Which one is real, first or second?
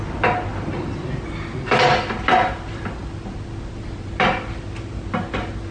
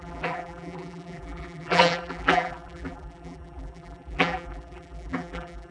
first